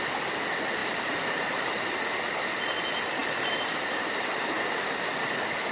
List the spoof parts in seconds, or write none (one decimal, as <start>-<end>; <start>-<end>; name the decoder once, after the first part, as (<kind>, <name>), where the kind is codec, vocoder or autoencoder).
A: none